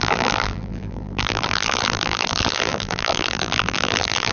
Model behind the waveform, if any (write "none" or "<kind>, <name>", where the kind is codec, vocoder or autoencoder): vocoder, BigVGAN v2